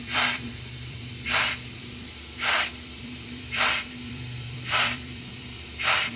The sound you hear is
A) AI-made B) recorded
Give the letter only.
A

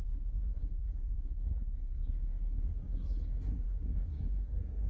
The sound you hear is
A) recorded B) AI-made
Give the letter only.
B